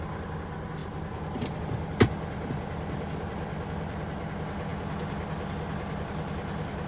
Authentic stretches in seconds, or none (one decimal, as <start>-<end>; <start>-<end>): 0.0-6.9